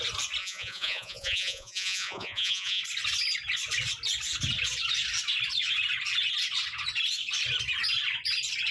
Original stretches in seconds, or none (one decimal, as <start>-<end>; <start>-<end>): 0.0-0.4; 2.8-8.7